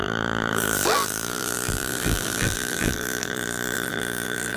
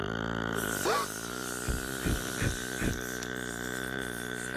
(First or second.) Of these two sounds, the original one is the second